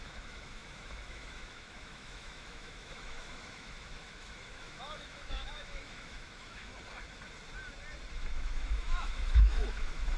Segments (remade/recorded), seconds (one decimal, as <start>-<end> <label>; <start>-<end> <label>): 0.0-6.7 remade; 6.7-8.1 recorded; 8.1-10.2 remade